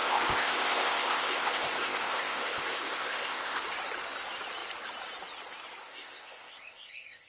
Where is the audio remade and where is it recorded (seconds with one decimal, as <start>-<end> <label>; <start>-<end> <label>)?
0.0-3.6 remade; 3.6-5.8 recorded; 5.8-7.3 remade